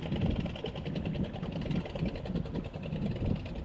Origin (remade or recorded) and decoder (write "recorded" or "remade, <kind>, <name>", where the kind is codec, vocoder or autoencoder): recorded